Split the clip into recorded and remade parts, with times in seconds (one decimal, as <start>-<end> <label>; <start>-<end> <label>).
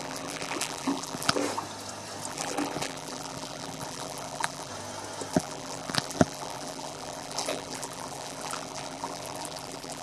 0.0-1.4 remade; 1.4-2.3 recorded; 2.3-4.7 remade; 4.7-5.3 recorded; 5.3-10.0 remade